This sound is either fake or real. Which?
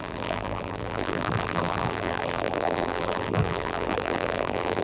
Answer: fake